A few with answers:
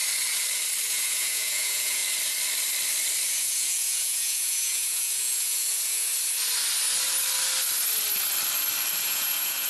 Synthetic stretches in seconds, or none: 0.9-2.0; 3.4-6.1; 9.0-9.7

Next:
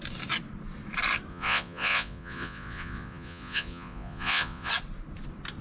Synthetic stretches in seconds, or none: 1.3-4.7

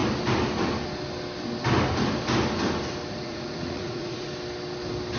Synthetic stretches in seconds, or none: 3.1-4.3

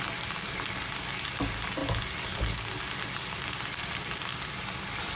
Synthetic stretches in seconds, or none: none